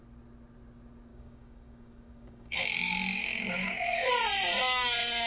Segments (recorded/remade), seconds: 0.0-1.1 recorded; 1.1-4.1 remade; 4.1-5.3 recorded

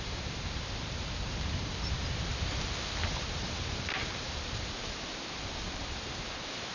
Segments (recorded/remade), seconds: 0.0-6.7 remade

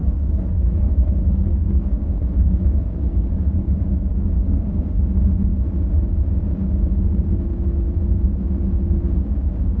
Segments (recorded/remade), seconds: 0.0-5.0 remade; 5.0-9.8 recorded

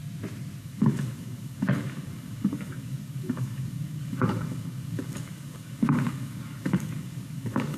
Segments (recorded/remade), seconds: 0.0-0.6 recorded; 0.6-7.8 remade